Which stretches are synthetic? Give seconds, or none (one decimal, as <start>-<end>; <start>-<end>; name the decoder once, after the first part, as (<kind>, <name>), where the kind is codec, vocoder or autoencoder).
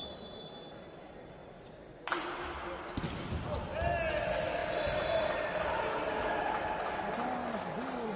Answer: 0.0-0.5 (vocoder, BigVGAN v2); 1.4-2.1; 4.6-6.2